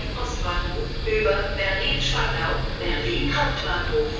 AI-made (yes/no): no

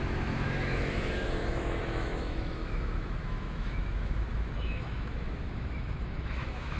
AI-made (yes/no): yes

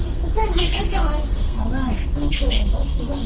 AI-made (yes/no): yes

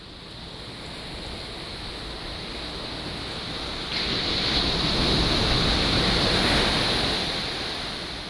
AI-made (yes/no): no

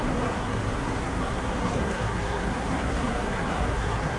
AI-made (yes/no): yes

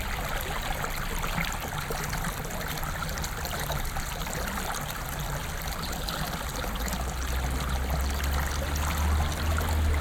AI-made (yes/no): no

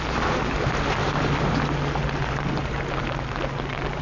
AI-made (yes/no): no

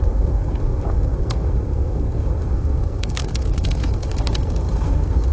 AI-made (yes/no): yes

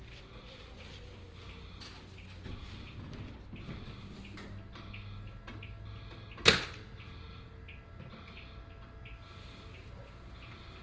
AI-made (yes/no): no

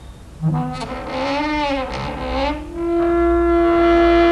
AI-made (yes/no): no